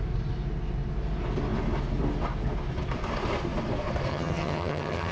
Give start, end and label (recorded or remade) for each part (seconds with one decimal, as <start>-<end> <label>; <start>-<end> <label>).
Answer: 0.0-4.1 recorded; 4.1-5.1 remade